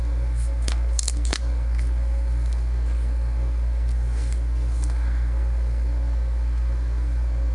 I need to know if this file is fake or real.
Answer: fake